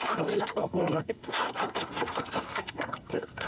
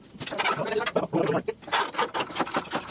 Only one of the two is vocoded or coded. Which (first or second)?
first